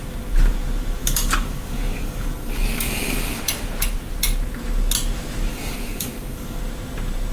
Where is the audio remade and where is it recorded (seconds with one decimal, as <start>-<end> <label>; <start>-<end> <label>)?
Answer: 0.0-1.0 recorded; 1.0-3.4 remade; 3.4-5.5 recorded; 5.5-6.6 remade; 6.6-7.3 recorded

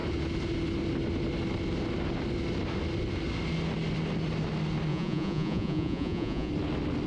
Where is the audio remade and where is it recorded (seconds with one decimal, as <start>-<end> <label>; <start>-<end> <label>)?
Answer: 0.0-4.9 recorded; 4.9-6.5 remade; 6.5-7.1 recorded

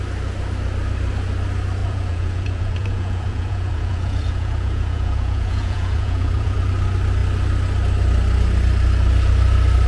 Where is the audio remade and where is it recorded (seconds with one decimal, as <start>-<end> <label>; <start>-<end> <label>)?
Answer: 0.0-1.8 recorded; 1.8-6.6 remade; 6.6-9.9 recorded

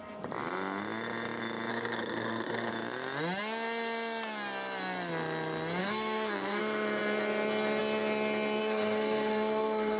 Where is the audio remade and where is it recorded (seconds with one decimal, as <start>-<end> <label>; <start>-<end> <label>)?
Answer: 0.0-1.7 recorded; 1.7-2.7 remade; 2.7-5.8 recorded; 5.8-6.6 remade; 6.6-8.6 recorded; 8.6-10.0 remade

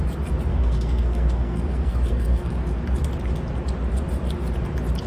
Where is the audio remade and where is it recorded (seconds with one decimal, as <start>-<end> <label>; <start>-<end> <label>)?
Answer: 0.0-0.5 recorded; 0.5-2.5 remade; 2.5-5.1 recorded

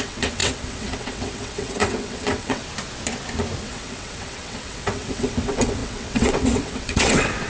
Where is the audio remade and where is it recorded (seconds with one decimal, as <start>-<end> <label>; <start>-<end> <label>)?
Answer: 0.0-2.6 remade; 2.6-3.6 recorded; 3.6-7.5 remade

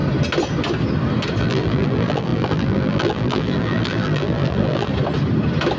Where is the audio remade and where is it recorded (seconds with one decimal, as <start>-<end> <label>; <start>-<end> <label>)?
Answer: 0.0-1.4 recorded; 1.4-4.9 remade; 4.9-5.8 recorded

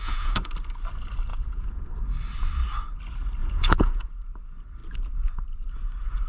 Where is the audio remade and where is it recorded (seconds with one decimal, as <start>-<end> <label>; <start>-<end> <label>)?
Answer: 0.0-0.5 remade; 0.5-1.3 recorded; 1.3-1.9 remade; 1.9-3.4 recorded; 3.4-4.1 remade; 4.1-6.3 recorded